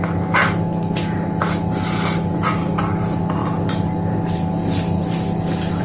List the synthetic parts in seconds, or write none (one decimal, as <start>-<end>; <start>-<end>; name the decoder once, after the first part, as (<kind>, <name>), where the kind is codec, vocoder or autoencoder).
none